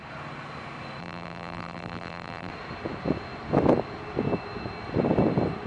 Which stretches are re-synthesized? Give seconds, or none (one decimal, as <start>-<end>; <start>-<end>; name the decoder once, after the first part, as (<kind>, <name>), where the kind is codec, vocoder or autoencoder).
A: 1.0-2.5 (vocoder, BigVGAN v2)